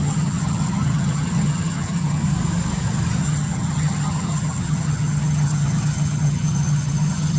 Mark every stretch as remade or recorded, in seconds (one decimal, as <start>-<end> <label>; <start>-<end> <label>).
0.0-2.2 remade; 2.2-3.2 recorded; 3.2-7.4 remade